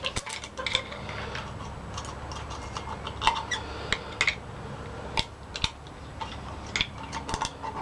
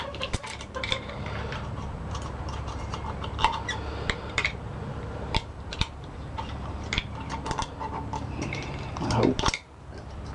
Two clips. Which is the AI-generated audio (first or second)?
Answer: second